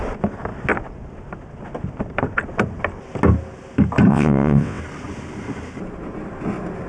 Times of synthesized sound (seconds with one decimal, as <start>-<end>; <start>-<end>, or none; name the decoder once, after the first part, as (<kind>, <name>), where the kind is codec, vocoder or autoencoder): 4.1-4.8 (vocoder, WaveNeXt)